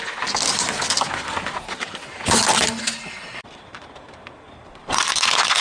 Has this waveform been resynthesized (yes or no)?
no